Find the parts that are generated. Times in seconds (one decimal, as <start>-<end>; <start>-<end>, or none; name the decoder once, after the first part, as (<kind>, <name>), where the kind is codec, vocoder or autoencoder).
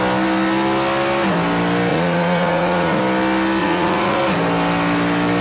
1.9-3.0 (vocoder, Vocos); 3.6-4.2